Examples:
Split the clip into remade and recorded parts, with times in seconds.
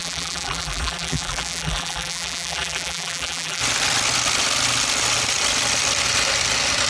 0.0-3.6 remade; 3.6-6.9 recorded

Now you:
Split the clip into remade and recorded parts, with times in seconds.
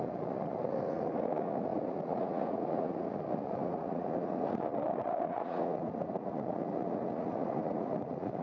0.0-8.4 remade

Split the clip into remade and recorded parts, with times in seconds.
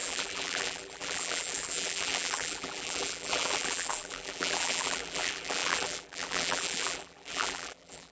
0.0-8.1 remade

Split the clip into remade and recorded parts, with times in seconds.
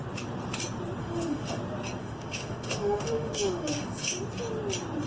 0.0-1.0 recorded; 1.0-1.6 remade; 1.6-2.0 recorded; 2.0-4.2 remade; 4.2-5.1 recorded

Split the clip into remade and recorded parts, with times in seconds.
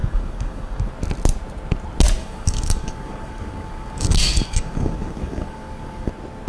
0.0-0.9 remade; 0.9-2.2 recorded; 2.2-6.1 remade; 6.1-6.5 recorded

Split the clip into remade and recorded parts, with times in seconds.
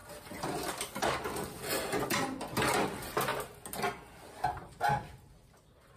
0.0-6.0 recorded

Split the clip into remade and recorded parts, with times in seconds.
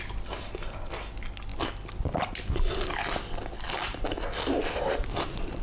0.0-5.6 recorded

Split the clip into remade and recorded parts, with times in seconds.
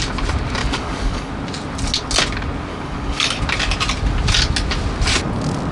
0.0-0.6 recorded; 0.6-1.3 remade; 1.3-2.7 recorded; 2.7-3.4 remade; 3.4-5.7 recorded